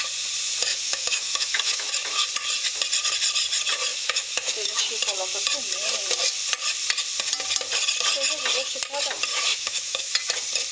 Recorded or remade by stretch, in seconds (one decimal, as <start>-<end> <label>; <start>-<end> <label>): 0.0-0.7 recorded; 0.7-1.9 remade; 1.9-3.9 recorded; 3.9-4.8 remade; 4.8-9.5 recorded; 9.5-10.1 remade; 10.1-10.7 recorded